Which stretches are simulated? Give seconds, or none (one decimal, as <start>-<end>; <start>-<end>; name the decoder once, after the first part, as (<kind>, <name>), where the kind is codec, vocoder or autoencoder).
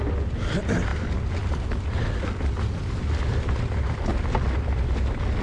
none